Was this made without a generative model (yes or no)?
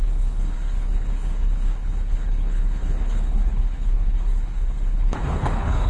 no